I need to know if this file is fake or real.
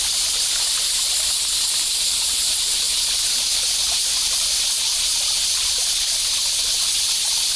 real